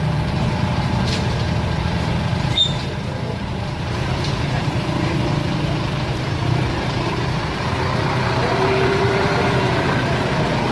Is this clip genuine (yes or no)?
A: no